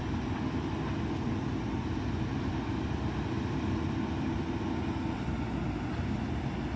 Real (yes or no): yes